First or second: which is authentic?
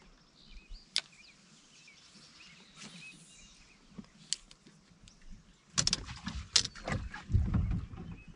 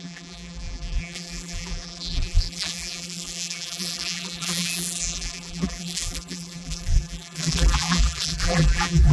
first